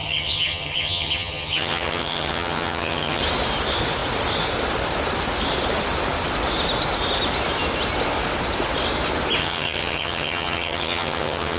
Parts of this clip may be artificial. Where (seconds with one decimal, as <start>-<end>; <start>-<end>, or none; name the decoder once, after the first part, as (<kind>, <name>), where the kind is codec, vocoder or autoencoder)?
0.0-3.2 (vocoder, HiFi-GAN); 9.4-11.6